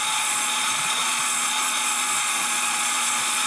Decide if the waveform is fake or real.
fake